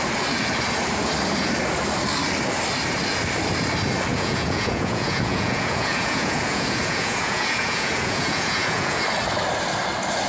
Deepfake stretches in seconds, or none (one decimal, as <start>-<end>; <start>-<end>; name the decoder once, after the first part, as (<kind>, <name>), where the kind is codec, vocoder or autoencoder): 4.1-9.0 (vocoder, Vocos)